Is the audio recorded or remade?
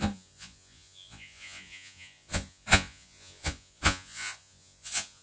remade